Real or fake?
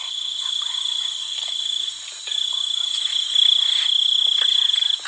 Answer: real